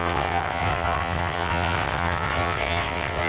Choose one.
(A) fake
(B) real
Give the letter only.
A